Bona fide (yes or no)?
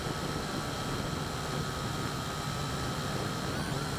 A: yes